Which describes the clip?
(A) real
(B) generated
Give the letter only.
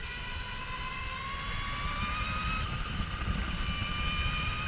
A